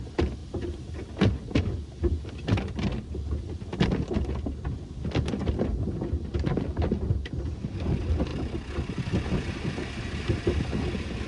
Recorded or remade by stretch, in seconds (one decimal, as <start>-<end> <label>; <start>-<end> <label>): 0.0-11.3 recorded